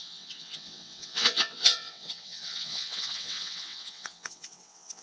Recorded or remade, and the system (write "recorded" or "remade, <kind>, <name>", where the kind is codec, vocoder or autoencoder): remade, vocoder, WaveNeXt